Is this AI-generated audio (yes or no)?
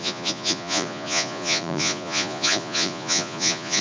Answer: yes